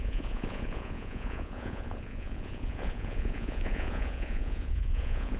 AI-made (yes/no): yes